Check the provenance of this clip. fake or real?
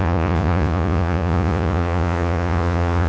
fake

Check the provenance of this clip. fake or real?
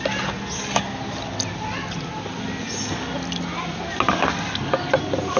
real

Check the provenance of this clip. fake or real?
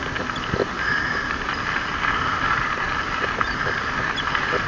real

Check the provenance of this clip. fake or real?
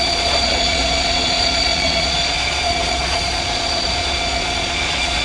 fake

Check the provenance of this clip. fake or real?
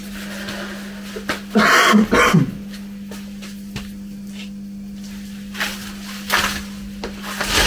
real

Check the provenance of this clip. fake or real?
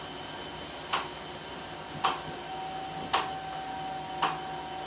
real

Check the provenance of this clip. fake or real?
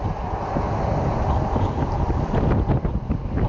real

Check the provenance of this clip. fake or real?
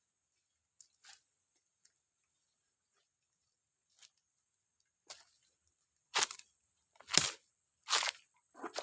real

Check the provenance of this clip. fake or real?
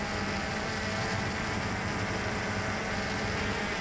real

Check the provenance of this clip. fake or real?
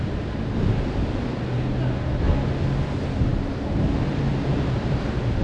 real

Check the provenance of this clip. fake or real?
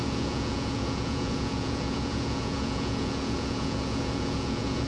fake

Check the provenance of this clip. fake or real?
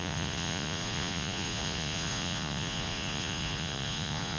fake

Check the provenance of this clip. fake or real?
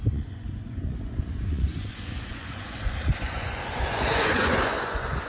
fake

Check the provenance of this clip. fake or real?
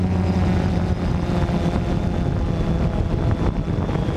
real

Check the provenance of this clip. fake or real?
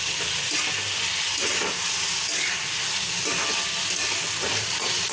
real